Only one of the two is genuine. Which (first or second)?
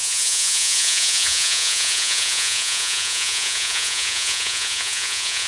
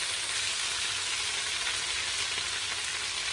second